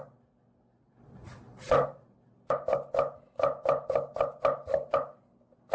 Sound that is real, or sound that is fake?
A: real